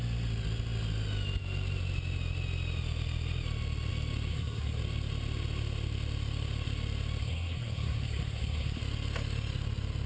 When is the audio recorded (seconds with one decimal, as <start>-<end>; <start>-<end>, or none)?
0.0-4.3; 4.8-7.2; 8.8-10.1